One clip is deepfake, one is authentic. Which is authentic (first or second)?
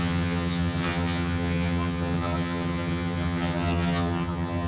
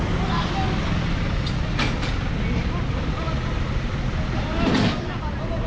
second